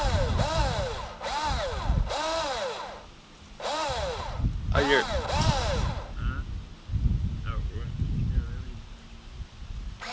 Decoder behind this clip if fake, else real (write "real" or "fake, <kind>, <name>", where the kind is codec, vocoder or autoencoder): real